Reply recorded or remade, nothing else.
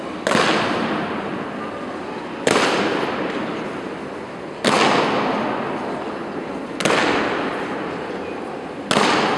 recorded